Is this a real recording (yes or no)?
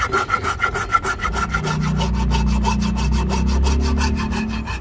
yes